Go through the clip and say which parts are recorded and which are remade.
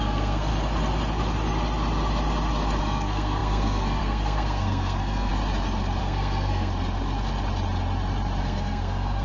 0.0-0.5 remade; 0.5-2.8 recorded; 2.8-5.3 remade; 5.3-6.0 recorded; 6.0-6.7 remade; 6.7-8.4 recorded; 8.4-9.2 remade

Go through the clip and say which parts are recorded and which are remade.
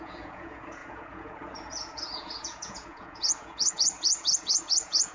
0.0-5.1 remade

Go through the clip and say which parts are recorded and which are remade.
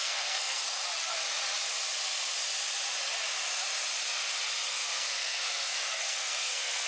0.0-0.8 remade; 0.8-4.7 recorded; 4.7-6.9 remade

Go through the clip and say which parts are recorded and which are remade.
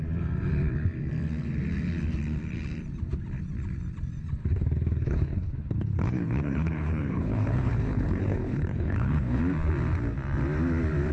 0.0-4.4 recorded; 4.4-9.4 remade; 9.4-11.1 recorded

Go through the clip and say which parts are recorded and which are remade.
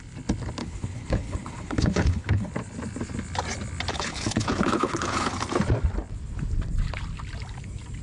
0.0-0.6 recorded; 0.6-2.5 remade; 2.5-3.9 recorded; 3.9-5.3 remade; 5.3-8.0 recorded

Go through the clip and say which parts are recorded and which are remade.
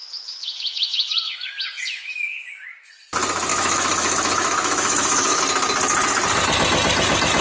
0.0-2.9 remade; 2.9-3.5 recorded; 3.5-5.4 remade; 5.4-7.4 recorded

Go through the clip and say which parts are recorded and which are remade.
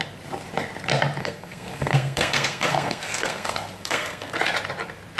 0.0-1.2 recorded; 1.2-4.3 remade; 4.3-5.2 recorded